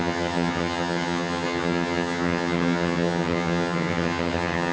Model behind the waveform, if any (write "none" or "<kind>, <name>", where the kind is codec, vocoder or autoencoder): vocoder, HiFi-GAN